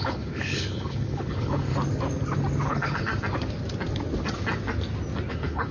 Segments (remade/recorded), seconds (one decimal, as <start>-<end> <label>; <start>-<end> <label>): 0.0-1.7 remade; 1.7-2.7 recorded; 2.7-3.1 remade; 3.1-5.3 recorded; 5.3-5.7 remade